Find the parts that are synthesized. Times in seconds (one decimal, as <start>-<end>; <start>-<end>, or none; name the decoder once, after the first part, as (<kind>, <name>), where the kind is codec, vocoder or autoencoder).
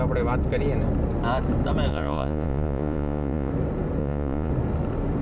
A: 1.9-3.5 (vocoder, Vocos); 4.0-4.5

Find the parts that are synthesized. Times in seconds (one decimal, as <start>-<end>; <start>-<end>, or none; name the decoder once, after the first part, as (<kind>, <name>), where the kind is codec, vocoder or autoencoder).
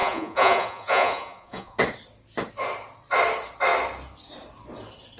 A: 0.0-1.8 (vocoder, Vocos)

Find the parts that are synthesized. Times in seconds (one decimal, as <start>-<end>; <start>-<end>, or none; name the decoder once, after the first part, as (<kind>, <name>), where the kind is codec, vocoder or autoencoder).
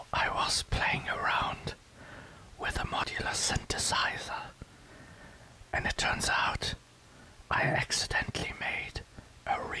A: 0.0-1.2 (vocoder, Vocos); 4.8-9.8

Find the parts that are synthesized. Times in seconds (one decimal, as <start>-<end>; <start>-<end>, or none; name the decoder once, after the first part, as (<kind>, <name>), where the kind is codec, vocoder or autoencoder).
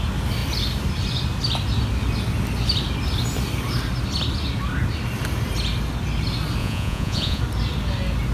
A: 6.6-7.4 (vocoder, Vocos)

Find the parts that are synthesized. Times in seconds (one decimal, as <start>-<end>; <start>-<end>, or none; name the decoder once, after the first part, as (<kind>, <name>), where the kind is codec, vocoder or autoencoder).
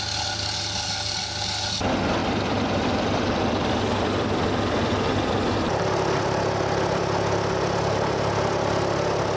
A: none